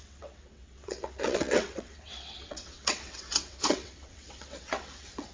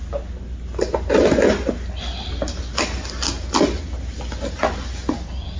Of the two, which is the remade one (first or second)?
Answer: first